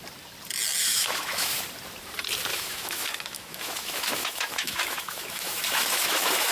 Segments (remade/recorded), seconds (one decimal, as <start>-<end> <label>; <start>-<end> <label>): 0.0-0.8 recorded; 0.8-1.5 remade; 1.5-2.5 recorded; 2.5-6.5 remade